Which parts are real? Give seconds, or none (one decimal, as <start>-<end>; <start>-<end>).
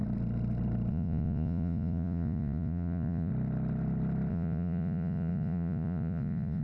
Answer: 0.0-0.9; 3.3-4.3